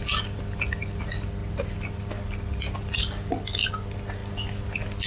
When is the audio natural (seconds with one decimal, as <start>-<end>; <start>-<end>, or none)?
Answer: 0.0-5.1